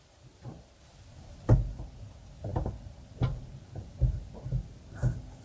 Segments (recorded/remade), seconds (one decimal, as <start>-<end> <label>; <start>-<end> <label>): 0.0-5.4 recorded